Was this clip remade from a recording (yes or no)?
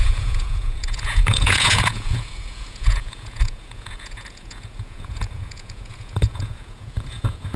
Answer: yes